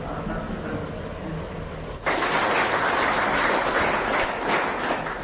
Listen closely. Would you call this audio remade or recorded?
recorded